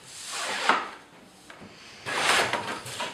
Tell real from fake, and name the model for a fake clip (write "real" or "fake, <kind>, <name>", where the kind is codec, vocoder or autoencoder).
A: real